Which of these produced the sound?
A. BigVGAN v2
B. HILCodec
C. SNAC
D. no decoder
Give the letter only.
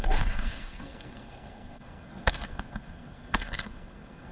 C